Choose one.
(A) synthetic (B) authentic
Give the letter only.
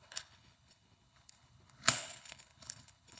A